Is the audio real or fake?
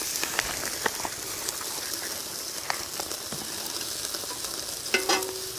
real